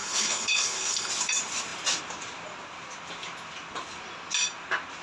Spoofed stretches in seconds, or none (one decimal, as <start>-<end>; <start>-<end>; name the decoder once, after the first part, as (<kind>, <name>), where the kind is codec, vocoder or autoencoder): 0.0-1.1 (codec, HILCodec)